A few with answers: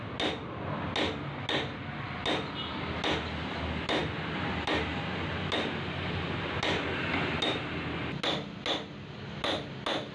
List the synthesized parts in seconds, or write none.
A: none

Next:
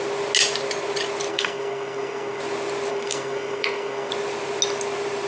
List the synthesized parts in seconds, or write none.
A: 1.3-2.4 (codec, SNAC); 2.9-4.1

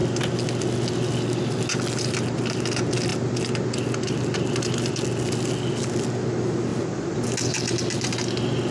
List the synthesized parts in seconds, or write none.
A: none

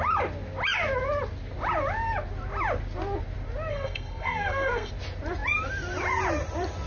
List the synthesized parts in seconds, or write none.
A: 3.7-4.9 (codec, SNAC)

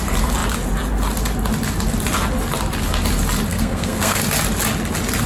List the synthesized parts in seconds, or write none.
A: 3.5-4.2 (codec, SNAC)

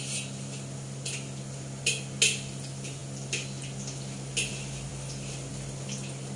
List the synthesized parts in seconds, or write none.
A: none